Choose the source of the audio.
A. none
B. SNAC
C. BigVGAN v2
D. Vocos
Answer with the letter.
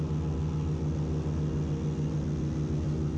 A